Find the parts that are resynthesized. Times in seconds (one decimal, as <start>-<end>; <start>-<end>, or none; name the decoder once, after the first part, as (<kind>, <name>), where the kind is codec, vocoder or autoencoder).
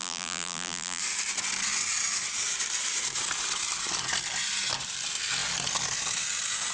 0.0-1.0 (vocoder, BigVGAN v2)